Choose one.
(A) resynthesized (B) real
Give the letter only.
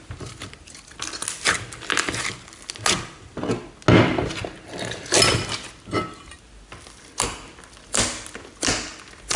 B